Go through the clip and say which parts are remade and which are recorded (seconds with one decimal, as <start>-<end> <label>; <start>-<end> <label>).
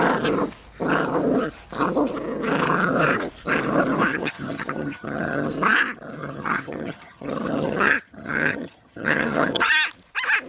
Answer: 0.0-4.1 recorded; 4.1-5.5 remade; 5.5-6.2 recorded; 6.2-9.7 remade; 9.7-10.5 recorded